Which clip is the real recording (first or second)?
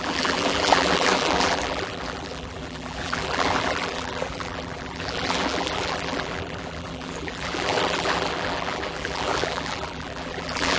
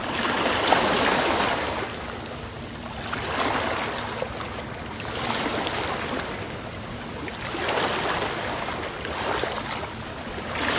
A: second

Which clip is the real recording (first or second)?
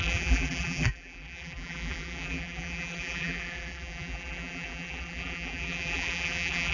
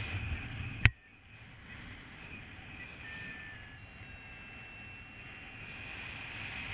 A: second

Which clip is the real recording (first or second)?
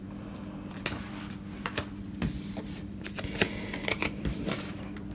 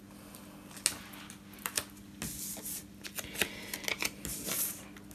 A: second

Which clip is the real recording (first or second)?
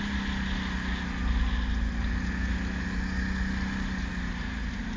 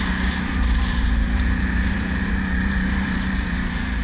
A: first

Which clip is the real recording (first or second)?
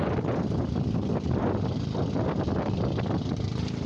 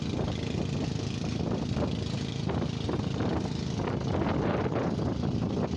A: second